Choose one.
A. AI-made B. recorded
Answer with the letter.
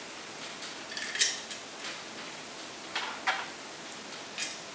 B